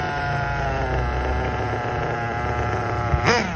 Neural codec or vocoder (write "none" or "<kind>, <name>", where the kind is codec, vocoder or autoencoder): none